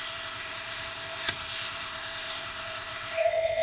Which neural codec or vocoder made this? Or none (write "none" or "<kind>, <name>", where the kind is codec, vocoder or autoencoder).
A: codec, ZipCodec